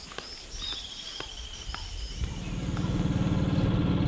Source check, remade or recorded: recorded